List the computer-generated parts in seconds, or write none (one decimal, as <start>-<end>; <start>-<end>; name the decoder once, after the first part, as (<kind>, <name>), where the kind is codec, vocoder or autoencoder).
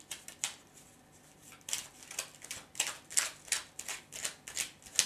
none